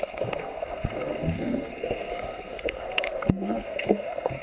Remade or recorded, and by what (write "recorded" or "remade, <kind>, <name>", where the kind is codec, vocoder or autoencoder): remade, codec, SNAC